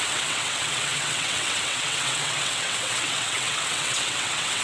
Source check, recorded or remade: remade